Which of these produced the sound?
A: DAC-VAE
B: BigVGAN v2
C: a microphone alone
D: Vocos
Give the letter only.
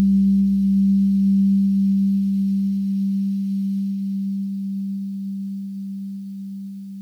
C